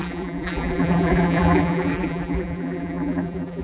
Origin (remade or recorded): remade